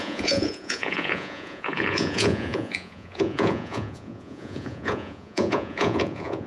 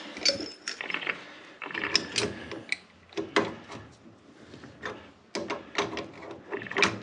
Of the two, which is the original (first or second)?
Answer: second